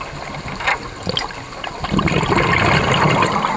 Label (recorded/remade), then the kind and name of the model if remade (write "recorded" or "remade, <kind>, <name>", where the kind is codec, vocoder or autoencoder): recorded